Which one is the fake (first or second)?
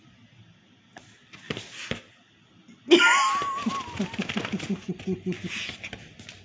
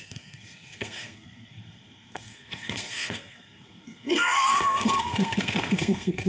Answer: second